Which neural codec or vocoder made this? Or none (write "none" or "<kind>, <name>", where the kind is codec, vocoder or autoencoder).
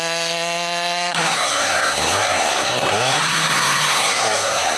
codec, SNAC